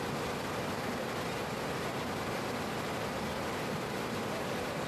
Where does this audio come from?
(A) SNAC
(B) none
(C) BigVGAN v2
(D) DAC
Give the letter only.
B